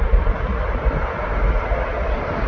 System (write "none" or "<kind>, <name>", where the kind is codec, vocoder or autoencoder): none